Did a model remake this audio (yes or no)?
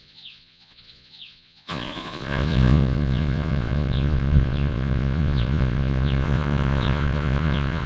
yes